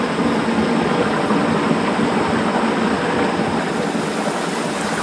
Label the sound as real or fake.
real